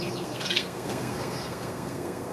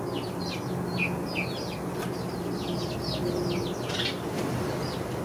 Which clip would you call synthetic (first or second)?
first